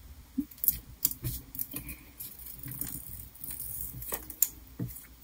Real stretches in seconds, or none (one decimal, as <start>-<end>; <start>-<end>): 0.0-5.2